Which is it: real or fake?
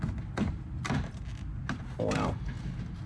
real